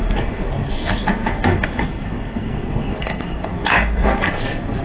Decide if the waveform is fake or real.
fake